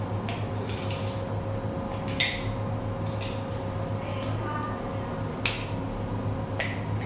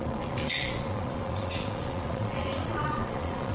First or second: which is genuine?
first